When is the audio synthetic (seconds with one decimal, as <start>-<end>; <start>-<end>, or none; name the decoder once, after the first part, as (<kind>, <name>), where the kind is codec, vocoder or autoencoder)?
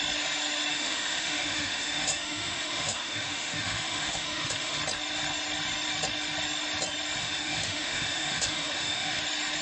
0.7-4.8 (autoencoder, DAC-VAE); 7.2-9.2